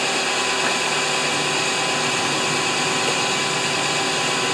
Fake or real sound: real